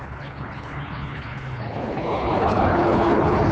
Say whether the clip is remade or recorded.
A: remade